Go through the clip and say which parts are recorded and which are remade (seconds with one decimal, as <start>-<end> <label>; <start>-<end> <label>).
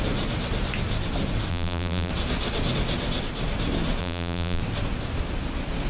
0.0-1.5 recorded; 1.5-2.1 remade; 2.1-4.0 recorded; 4.0-4.6 remade; 4.6-5.9 recorded